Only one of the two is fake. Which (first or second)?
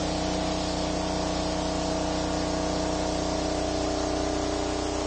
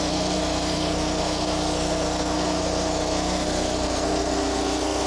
second